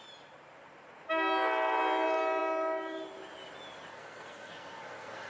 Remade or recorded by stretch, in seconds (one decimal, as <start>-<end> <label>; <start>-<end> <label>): 0.0-3.9 recorded; 3.9-5.3 remade